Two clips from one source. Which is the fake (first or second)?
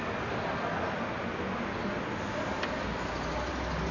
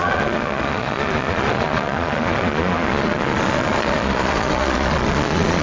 second